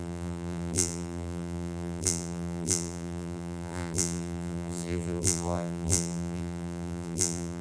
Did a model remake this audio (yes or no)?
yes